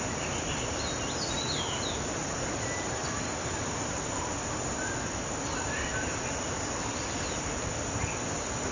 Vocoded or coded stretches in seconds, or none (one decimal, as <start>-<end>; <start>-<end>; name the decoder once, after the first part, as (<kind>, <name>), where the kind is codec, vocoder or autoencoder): none